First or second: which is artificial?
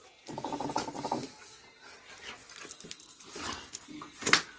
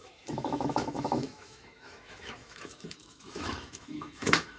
second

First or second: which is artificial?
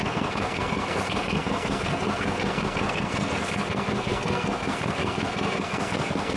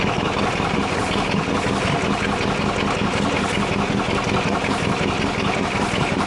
first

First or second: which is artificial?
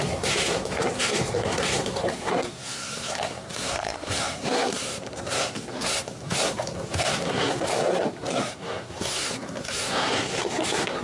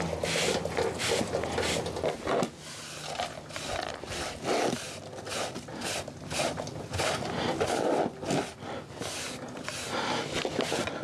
first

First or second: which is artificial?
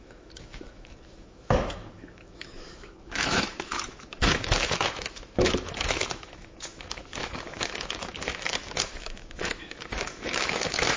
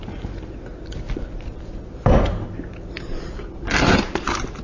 first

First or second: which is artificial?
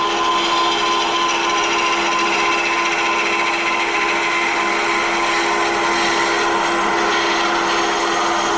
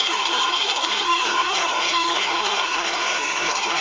second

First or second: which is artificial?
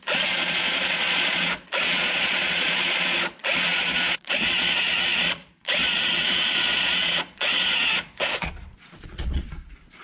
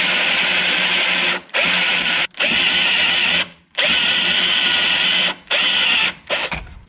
first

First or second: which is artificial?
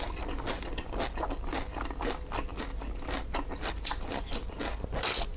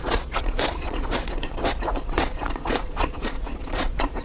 second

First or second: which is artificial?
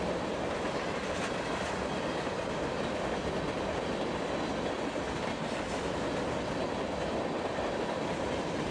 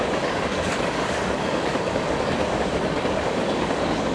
second